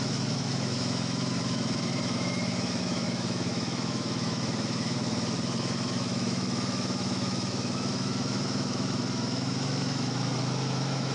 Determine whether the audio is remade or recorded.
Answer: remade